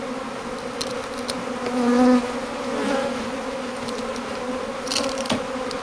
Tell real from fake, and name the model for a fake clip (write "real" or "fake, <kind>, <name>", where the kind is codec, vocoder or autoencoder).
real